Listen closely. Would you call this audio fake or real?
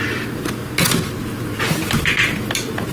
real